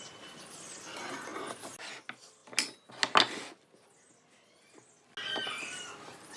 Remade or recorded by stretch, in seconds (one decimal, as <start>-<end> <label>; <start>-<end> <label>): 0.0-6.4 recorded